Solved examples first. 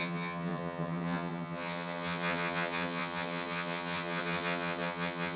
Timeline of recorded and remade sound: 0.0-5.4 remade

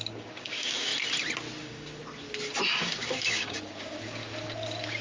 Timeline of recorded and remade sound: 0.0-0.9 remade; 0.9-1.6 recorded; 1.6-2.0 remade; 2.0-2.7 recorded; 2.7-4.2 remade; 4.2-5.0 recorded

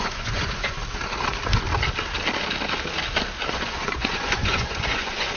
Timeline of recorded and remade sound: 0.0-0.8 remade; 0.8-3.5 recorded; 3.5-5.4 remade

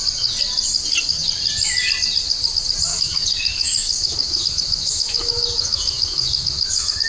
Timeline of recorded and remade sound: 0.0-2.9 recorded; 2.9-7.1 remade

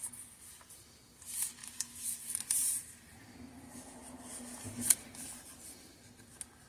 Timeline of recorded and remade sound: 0.0-1.6 recorded; 1.6-3.3 remade; 3.3-4.0 recorded; 4.0-6.0 remade; 6.0-6.7 recorded